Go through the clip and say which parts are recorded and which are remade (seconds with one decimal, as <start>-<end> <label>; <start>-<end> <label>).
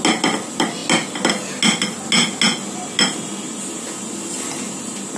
0.0-5.2 recorded